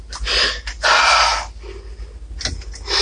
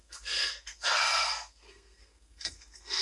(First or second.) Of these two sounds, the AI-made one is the second